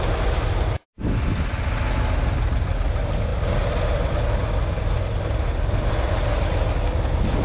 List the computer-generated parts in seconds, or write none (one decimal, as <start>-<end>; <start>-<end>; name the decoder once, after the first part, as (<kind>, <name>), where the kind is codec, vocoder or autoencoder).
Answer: none